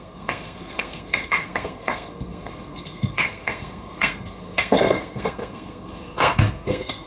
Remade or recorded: remade